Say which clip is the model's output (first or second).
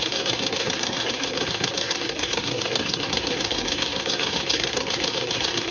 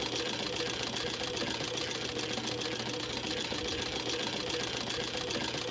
first